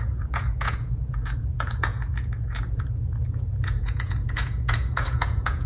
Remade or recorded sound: remade